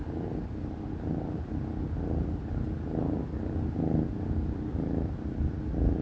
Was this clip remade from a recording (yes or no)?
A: no